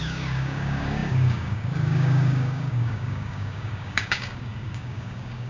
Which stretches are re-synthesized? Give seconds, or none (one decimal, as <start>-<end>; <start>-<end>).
0.0-5.5